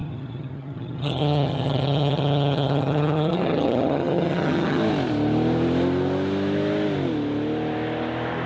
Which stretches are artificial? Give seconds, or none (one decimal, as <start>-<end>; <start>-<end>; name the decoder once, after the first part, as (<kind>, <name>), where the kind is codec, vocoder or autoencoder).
0.0-4.8 (vocoder, HiFi-GAN)